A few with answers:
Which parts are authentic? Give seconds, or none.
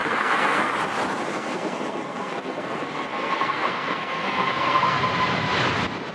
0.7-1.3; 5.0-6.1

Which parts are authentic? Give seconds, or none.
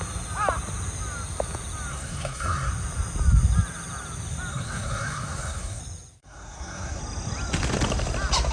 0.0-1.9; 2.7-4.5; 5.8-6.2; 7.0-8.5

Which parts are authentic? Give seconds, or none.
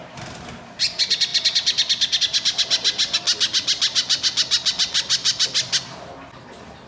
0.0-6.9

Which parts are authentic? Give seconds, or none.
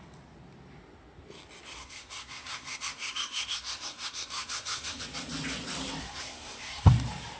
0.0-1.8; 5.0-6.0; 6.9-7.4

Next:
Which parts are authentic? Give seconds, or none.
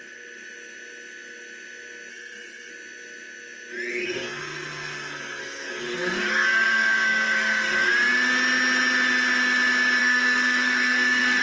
0.0-2.1; 2.7-3.9; 7.9-10.0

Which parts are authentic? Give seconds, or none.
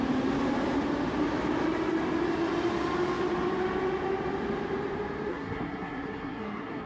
0.0-5.3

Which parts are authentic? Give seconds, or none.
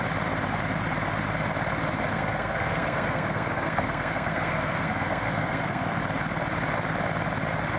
0.0-2.1; 6.0-7.8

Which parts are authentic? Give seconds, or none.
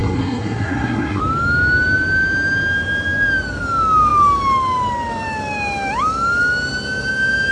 1.2-7.5